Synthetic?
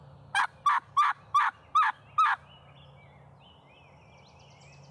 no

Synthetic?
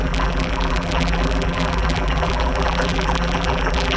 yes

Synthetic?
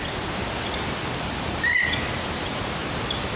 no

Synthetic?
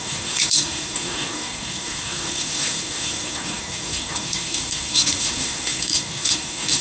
yes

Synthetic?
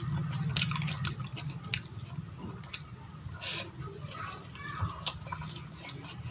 no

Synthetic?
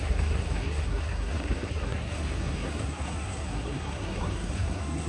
yes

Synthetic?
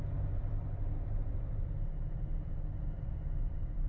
yes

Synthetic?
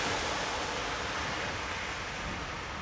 no